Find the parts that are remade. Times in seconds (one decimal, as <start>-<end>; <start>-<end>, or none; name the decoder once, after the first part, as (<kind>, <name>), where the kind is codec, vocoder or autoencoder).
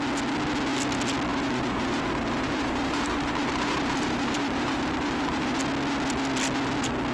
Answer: 1.3-5.6 (vocoder, BigVGAN v2)